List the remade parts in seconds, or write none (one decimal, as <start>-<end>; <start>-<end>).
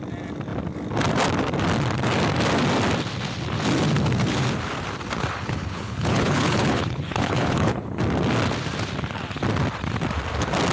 5.6-8.0